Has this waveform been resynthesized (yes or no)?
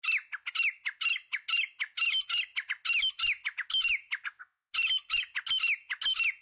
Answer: no